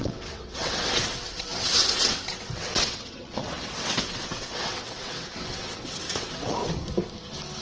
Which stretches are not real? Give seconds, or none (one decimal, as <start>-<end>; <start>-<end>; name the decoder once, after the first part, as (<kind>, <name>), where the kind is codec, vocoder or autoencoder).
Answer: 0.0-6.6 (vocoder, WaveNeXt)